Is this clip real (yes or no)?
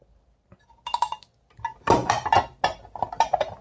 yes